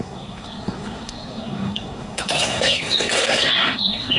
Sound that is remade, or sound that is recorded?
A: remade